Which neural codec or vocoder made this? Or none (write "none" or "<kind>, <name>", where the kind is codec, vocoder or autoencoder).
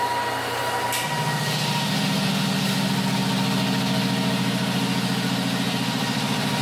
none